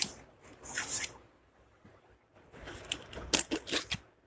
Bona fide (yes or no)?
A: yes